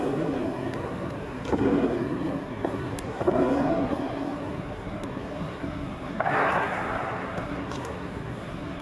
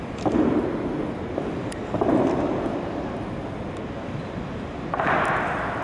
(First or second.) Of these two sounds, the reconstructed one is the first